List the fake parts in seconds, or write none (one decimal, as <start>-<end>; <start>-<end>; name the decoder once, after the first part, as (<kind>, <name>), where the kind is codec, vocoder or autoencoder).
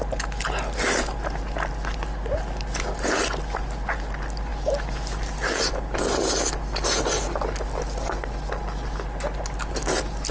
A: none